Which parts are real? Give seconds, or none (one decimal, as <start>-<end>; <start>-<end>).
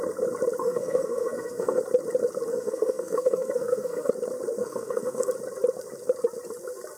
0.0-0.6; 1.8-2.5; 4.1-4.6; 5.3-7.0